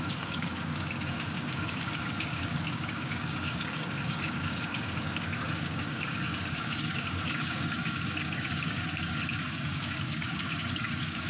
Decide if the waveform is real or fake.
fake